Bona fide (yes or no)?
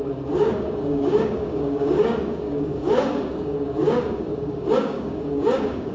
no